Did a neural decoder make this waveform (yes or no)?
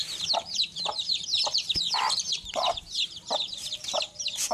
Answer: yes